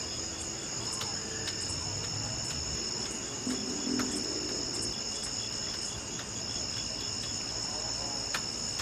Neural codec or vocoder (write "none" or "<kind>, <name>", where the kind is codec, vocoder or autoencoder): none